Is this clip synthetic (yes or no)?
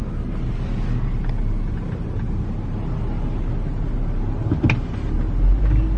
no